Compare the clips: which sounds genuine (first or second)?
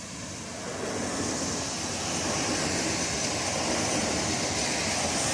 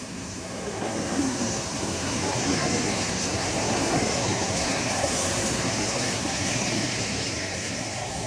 first